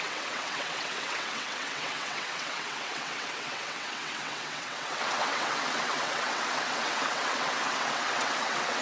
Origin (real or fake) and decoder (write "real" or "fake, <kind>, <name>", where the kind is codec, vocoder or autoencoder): fake, vocoder, WaveNeXt